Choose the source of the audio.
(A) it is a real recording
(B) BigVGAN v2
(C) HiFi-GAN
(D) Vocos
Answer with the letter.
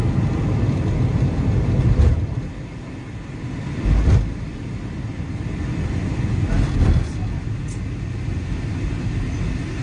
A